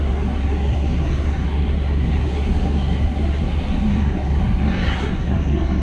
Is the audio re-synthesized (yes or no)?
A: yes